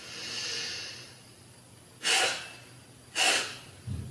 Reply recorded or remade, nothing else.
recorded